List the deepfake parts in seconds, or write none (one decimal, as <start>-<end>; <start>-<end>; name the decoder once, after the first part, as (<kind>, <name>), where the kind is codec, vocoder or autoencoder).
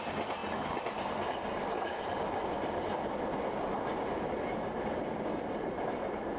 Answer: none